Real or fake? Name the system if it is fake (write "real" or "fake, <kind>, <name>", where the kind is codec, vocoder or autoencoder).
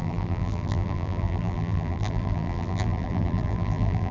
fake, vocoder, BigVGAN v2